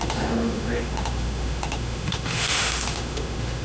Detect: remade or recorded remade